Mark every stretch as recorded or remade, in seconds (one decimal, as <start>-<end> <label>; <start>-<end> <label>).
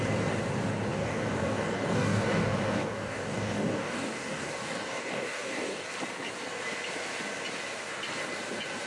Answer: 0.0-0.9 recorded; 0.9-5.9 remade; 5.9-8.9 recorded